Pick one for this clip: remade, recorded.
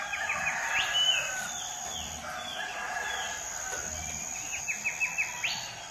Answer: recorded